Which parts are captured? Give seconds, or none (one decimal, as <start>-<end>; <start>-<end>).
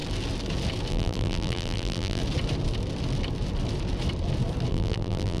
0.0-0.9; 2.2-4.7